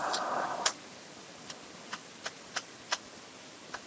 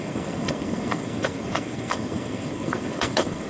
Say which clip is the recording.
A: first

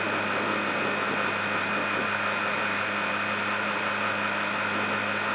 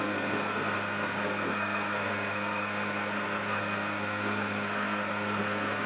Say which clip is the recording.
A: first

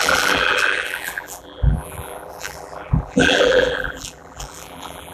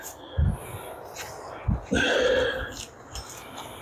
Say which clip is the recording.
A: second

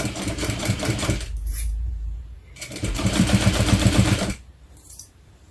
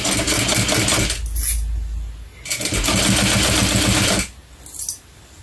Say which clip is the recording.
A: second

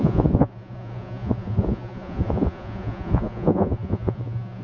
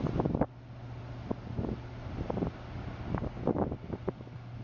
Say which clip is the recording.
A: second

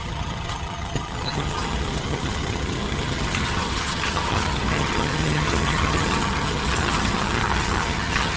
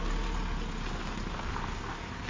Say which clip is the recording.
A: second